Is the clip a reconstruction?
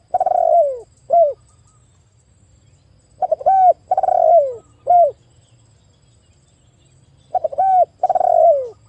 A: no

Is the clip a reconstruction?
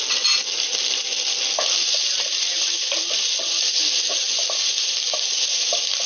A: no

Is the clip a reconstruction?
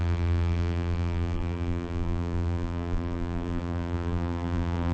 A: yes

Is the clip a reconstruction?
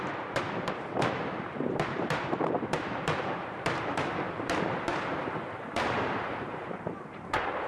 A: yes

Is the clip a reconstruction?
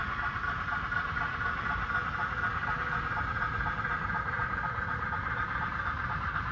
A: yes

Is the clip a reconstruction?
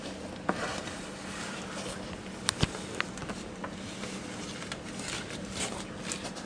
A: yes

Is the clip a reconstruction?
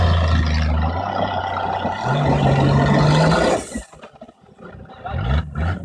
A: no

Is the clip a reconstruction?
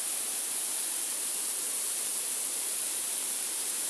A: yes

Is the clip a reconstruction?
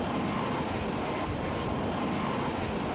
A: yes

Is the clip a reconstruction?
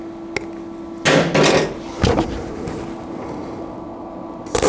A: no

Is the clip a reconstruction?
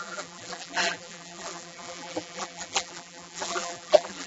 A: yes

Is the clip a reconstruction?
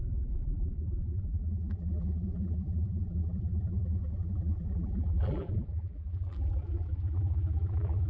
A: yes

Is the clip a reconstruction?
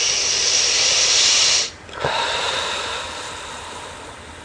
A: no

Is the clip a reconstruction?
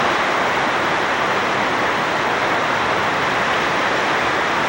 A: yes